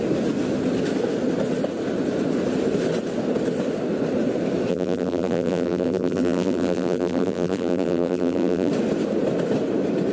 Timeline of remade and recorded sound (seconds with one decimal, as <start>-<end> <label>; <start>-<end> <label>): 0.0-4.7 recorded; 4.7-8.7 remade; 8.7-10.1 recorded